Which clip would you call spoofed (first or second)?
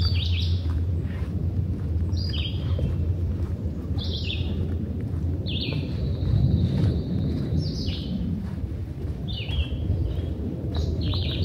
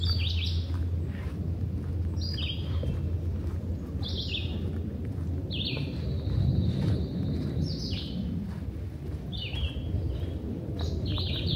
first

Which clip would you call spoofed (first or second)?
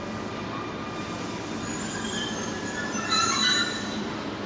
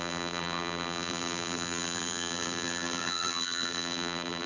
second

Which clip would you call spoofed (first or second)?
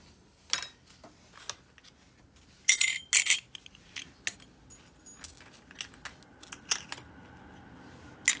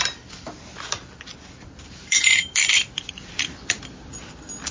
second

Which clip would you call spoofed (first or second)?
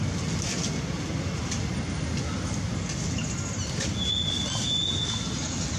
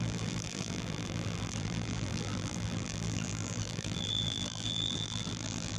second